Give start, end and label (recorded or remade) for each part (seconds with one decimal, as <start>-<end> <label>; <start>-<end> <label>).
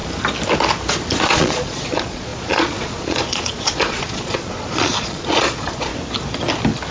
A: 0.0-1.2 recorded; 1.2-5.9 remade; 5.9-6.9 recorded